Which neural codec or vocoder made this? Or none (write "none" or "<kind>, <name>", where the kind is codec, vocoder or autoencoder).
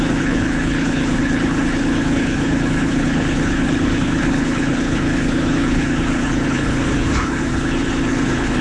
codec, HILCodec